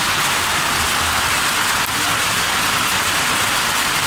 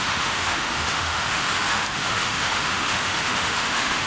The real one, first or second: first